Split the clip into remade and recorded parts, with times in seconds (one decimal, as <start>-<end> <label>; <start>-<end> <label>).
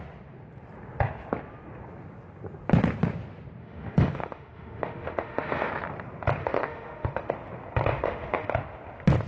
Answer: 0.0-3.6 recorded; 3.6-5.7 remade; 5.7-6.4 recorded; 6.4-7.3 remade; 7.3-7.9 recorded; 7.9-8.5 remade; 8.5-9.3 recorded